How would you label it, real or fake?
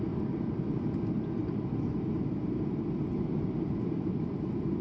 fake